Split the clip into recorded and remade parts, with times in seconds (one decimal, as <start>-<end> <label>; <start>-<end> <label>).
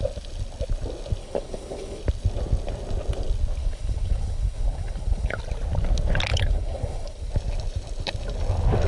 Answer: 0.0-1.2 recorded; 1.2-2.0 remade; 2.0-3.6 recorded; 3.6-5.4 remade; 5.4-6.3 recorded; 6.3-7.3 remade; 7.3-8.9 recorded